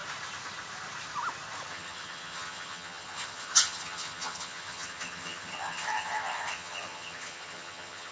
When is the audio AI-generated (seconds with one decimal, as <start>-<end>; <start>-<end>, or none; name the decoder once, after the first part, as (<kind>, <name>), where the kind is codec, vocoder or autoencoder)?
1.7-8.1 (vocoder, HiFi-GAN)